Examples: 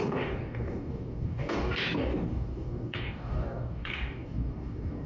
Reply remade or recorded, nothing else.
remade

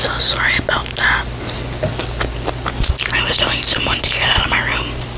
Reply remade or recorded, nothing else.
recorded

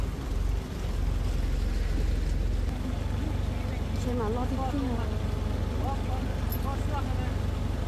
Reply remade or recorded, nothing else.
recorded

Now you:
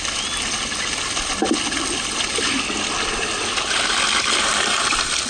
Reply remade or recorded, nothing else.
recorded